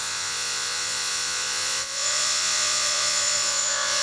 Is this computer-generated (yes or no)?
yes